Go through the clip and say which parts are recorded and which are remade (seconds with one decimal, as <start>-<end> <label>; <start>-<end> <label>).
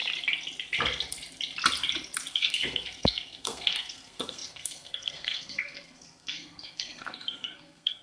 0.0-2.3 recorded; 2.3-8.0 remade